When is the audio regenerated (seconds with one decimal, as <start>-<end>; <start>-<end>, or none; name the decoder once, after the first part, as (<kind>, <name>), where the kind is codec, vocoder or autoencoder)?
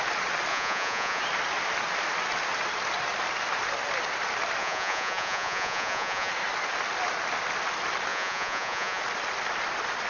0.5-1.2 (vocoder, Vocos); 4.6-6.3; 8.1-9.0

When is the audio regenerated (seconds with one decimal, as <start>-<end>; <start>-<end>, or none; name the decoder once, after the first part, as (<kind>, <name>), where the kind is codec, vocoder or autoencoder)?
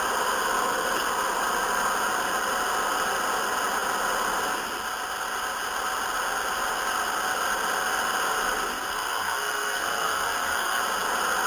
8.9-10.8 (codec, SNAC)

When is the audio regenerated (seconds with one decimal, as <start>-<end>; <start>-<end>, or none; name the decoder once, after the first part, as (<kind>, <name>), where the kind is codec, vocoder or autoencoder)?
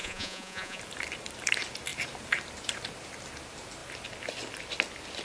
0.0-0.8 (vocoder, Vocos)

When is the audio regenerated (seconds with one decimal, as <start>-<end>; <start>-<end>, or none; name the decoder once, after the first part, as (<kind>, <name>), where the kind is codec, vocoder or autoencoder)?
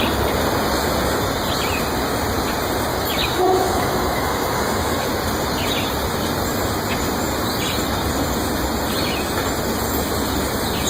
2.9-5.1 (autoencoder, DAC-VAE)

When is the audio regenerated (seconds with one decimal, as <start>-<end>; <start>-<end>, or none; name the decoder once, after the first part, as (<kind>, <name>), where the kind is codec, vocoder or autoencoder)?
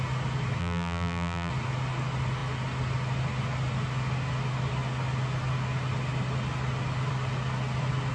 0.6-1.5 (vocoder, BigVGAN v2)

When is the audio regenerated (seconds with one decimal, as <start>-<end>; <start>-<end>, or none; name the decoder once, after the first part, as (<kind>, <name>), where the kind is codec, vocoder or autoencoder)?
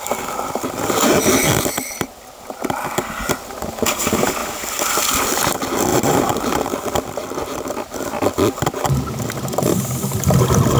5.9-6.4 (vocoder, BigVGAN v2)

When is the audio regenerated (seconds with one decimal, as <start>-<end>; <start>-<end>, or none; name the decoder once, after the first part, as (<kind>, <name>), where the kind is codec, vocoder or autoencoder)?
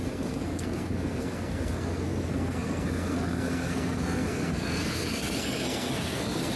0.0-6.6 (codec, SNAC)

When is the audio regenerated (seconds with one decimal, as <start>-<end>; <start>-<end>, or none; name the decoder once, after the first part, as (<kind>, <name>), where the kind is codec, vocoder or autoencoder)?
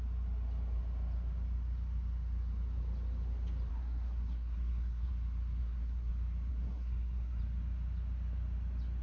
3.7-5.1 (codec, SNAC); 5.6-6.1; 6.5-7.4